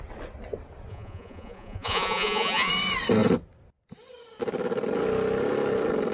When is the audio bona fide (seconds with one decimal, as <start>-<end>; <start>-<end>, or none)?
0.0-0.9; 2.7-6.1